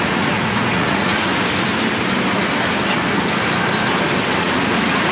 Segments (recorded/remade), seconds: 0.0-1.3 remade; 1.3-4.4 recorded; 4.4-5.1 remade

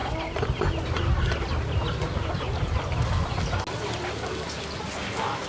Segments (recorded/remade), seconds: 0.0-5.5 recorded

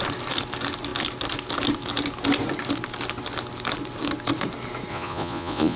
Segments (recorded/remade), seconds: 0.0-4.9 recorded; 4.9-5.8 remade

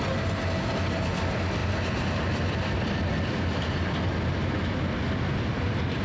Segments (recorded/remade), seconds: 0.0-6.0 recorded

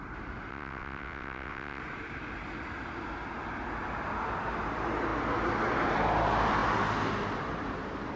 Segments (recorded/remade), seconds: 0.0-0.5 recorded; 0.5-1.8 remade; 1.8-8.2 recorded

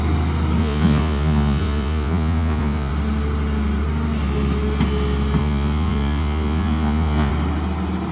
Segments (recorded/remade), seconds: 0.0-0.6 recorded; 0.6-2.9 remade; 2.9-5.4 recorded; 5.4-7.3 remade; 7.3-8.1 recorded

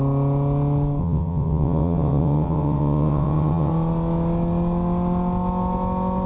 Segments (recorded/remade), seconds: 0.0-1.0 recorded; 1.0-3.7 remade; 3.7-6.3 recorded

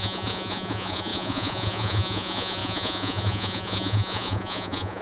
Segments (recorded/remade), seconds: 0.0-5.0 remade